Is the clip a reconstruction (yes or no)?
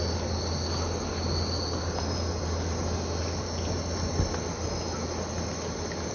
no